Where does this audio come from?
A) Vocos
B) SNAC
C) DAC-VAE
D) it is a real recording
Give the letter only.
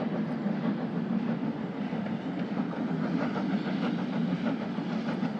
D